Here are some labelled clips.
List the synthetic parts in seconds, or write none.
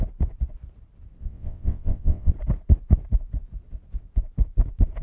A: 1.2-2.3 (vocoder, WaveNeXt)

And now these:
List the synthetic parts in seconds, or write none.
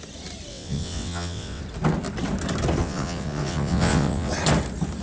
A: 0.5-1.6 (vocoder, WaveNeXt); 2.8-4.3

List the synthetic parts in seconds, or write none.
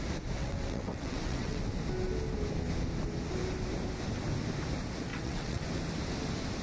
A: 0.4-1.6 (vocoder, WaveNeXt); 5.1-5.6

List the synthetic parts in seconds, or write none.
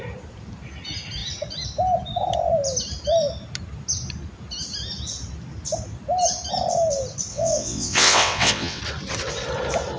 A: 7.3-8.8 (vocoder, WaveNeXt)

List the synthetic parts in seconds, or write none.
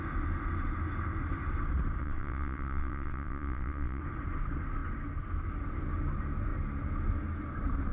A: 2.0-4.0 (vocoder, WaveNeXt)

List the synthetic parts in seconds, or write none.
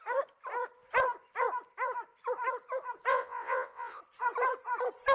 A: 3.1-4.0 (vocoder, WaveNeXt)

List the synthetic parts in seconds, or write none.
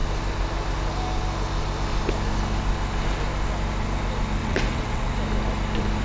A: 4.4-5.1 (vocoder, WaveNeXt)